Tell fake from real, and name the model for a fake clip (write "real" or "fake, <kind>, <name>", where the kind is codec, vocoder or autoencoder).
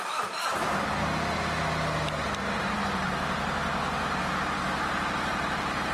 real